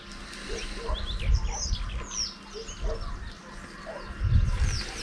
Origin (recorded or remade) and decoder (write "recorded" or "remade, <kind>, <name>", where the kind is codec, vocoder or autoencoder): recorded